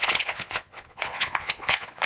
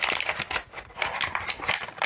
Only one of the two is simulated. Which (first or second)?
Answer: first